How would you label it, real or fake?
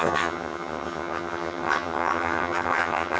fake